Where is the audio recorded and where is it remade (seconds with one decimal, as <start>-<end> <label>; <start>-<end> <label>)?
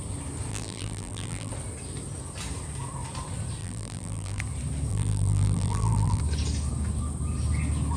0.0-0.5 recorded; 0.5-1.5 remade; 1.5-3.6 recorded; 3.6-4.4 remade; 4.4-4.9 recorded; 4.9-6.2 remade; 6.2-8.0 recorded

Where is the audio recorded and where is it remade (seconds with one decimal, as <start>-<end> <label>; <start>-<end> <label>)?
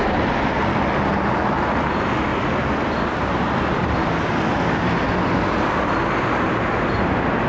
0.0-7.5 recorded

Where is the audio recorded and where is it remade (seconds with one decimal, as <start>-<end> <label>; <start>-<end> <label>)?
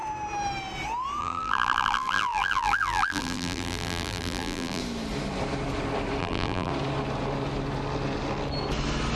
0.0-1.2 recorded; 1.2-4.8 remade; 4.8-6.2 recorded; 6.2-6.7 remade; 6.7-9.2 recorded